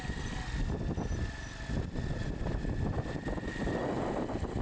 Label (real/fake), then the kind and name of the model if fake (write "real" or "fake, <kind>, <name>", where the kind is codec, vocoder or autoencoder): real